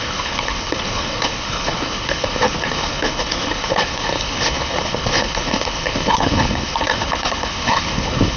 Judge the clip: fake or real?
fake